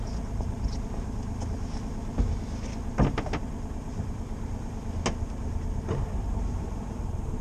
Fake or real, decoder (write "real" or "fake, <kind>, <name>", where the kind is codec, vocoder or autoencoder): real